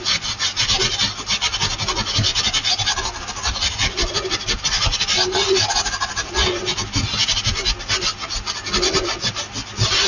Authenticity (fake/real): real